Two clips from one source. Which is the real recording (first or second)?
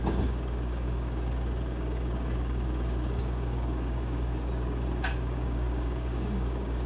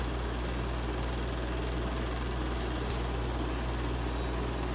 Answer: second